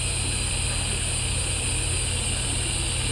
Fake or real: real